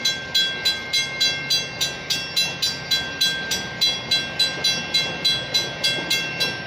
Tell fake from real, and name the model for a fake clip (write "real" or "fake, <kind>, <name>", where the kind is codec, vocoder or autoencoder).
real